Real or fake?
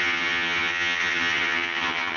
fake